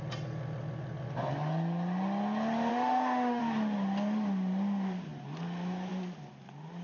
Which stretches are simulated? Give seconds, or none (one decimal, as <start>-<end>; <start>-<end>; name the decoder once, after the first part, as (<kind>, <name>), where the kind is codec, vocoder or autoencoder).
2.7-3.4 (autoencoder, DAC-VAE)